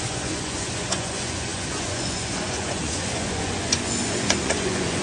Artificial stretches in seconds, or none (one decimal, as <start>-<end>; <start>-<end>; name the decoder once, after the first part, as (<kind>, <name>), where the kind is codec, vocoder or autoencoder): 0.0-5.0 (vocoder, Vocos)